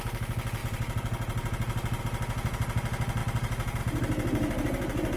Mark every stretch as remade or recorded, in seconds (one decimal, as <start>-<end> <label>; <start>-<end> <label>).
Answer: 0.0-0.6 recorded; 0.6-2.0 remade; 2.0-5.2 recorded

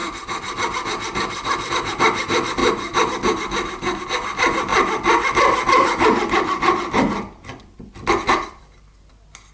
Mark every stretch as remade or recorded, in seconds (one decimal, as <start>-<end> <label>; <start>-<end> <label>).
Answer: 0.0-1.7 remade; 1.7-4.7 recorded; 4.7-9.1 remade; 9.1-9.5 recorded